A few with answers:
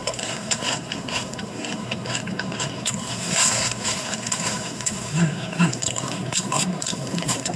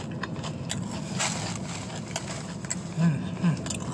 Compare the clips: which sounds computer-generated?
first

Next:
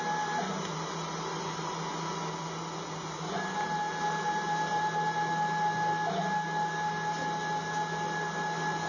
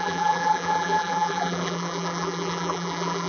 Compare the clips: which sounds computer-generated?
second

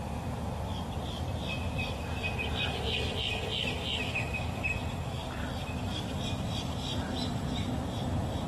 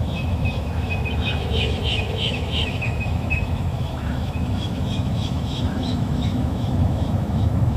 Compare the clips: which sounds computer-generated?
second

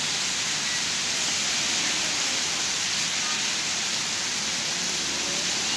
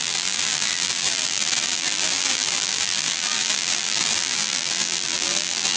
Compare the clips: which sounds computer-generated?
second